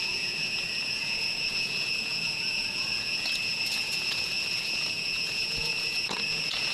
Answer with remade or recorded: remade